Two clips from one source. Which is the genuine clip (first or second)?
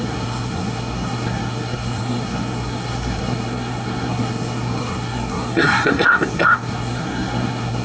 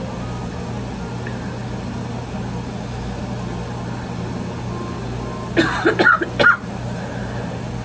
second